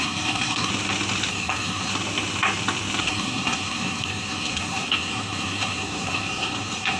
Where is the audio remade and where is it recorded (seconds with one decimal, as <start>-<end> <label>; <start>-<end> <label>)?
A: 0.0-0.7 remade; 0.7-1.3 recorded; 1.3-1.9 remade; 1.9-3.0 recorded; 3.0-7.0 remade